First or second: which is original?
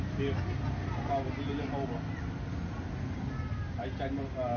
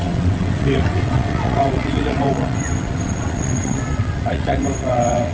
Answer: first